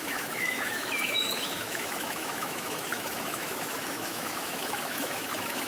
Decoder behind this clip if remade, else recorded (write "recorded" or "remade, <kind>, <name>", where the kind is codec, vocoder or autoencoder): remade, autoencoder, DAC-VAE